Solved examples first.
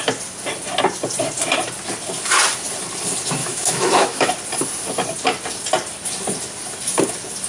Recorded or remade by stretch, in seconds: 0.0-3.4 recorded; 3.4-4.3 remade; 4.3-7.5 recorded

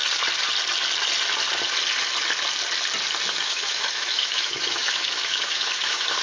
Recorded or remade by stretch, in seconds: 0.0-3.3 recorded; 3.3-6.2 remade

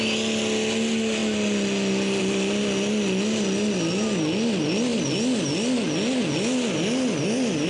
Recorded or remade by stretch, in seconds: 0.0-7.7 recorded

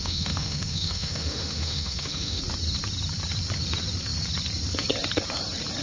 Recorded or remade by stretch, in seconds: 0.0-2.4 remade; 2.4-5.8 recorded

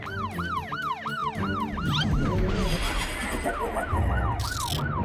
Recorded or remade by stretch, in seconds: 0.0-5.0 recorded

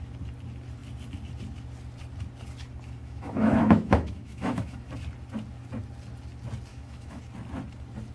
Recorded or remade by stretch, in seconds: 0.0-3.0 recorded; 3.0-4.9 remade; 4.9-6.7 recorded; 6.7-7.2 remade; 7.2-8.1 recorded